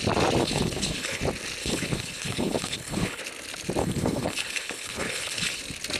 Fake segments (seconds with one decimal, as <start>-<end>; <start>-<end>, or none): 0.4-1.2; 1.6-3.2; 3.8-5.6